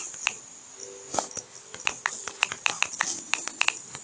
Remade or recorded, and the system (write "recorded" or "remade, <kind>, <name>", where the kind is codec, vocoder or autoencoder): recorded